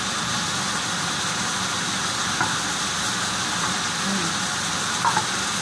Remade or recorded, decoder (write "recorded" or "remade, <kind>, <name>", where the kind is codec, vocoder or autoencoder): recorded